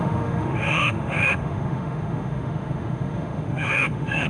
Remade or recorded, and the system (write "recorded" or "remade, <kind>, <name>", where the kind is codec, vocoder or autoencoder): remade, autoencoder, DAC-VAE